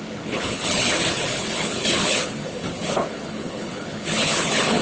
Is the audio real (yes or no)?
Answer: no